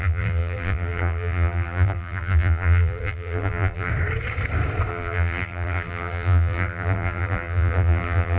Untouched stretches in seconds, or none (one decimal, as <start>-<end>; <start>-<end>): 3.9-4.9